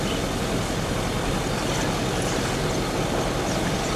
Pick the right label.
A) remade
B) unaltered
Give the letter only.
B